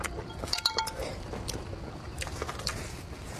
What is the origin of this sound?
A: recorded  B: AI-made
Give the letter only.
A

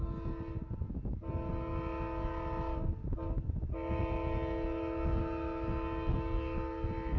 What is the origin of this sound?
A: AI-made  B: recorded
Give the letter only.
B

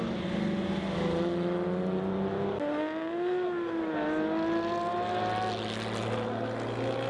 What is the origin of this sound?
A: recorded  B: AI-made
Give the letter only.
A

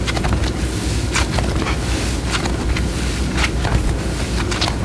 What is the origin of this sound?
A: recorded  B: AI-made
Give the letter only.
A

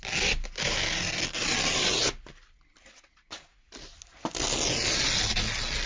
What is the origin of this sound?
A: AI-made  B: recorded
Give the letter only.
B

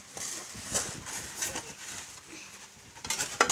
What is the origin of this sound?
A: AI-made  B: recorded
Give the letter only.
B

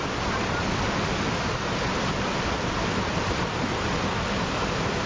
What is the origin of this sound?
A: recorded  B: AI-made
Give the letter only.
A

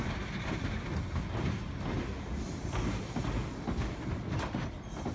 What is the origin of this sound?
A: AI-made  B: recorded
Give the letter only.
B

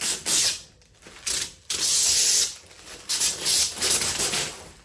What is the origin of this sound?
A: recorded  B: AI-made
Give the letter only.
A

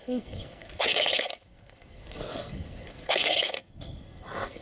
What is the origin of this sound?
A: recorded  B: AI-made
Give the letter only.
B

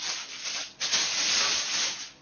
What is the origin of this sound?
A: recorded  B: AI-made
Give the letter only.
A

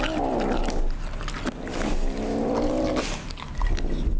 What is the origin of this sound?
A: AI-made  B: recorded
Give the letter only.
B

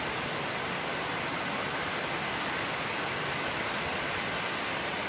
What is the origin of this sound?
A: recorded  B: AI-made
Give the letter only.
B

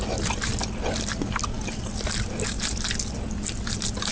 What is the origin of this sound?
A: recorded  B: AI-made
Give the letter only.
A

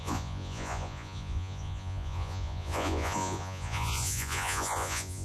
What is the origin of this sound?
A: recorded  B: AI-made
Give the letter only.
B